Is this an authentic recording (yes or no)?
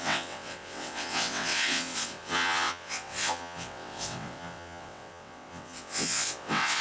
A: no